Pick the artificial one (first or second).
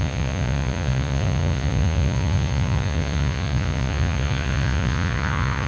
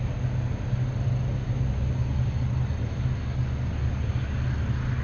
first